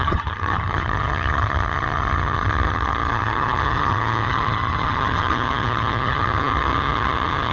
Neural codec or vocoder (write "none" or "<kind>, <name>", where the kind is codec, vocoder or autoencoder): vocoder, HiFi-GAN